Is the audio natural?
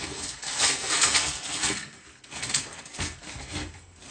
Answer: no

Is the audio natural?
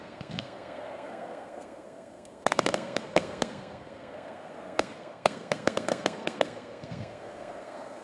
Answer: no